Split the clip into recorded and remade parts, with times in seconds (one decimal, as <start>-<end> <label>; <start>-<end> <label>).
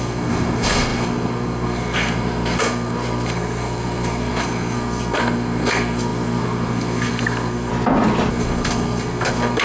0.0-7.7 remade; 7.7-8.3 recorded; 8.3-9.6 remade